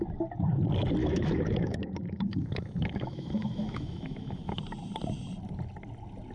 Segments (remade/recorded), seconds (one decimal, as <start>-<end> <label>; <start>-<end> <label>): 0.0-1.0 recorded; 1.0-4.6 remade; 4.6-6.3 recorded